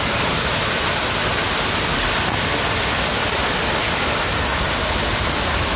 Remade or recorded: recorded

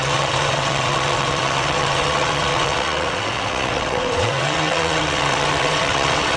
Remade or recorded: remade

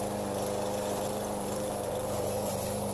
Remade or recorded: recorded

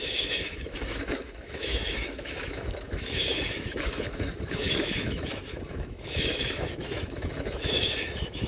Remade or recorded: remade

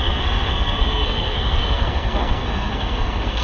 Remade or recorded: remade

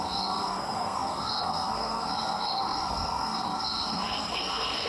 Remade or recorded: remade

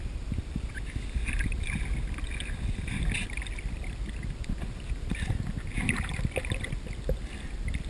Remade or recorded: recorded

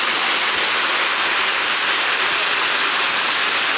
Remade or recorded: recorded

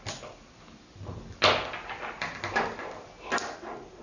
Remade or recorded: recorded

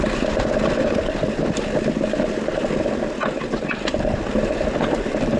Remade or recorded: recorded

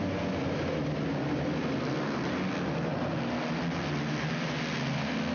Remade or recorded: recorded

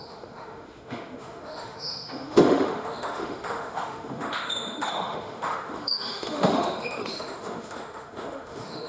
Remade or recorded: remade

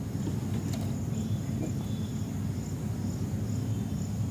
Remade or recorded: recorded